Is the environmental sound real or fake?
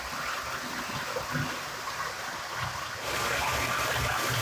real